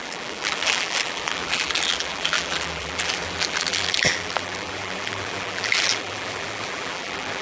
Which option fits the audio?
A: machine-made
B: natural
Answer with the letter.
A